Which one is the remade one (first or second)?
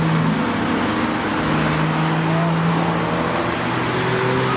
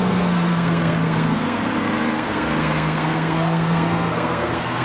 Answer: second